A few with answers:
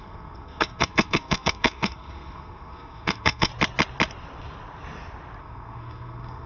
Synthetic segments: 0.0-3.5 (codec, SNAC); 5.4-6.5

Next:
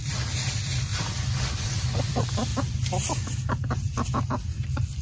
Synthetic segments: 0.0-0.9 (vocoder, BigVGAN v2); 1.8-2.5; 3.5-5.0

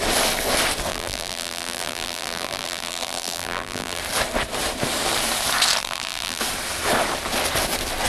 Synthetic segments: 0.9-4.0 (vocoder, BigVGAN v2); 5.8-6.4

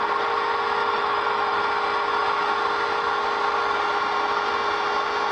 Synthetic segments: 0.8-1.6 (autoencoder, DAC-VAE)

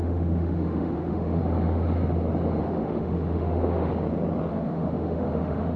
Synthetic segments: 0.0-1.4 (autoencoder, DAC-VAE); 2.6-3.9; 4.5-5.8

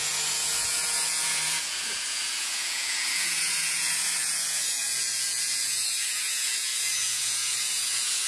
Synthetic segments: 0.0-8.3 (vocoder, Vocos)

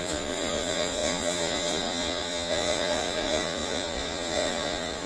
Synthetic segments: 0.0-5.1 (vocoder, Vocos)